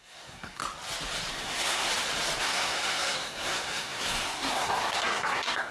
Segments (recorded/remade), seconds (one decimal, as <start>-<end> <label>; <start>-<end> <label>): 0.0-0.6 remade; 0.6-1.3 recorded; 1.3-1.9 remade; 1.9-2.4 recorded; 2.4-5.7 remade